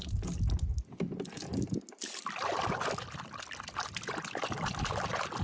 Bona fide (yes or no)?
yes